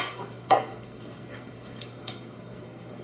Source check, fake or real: fake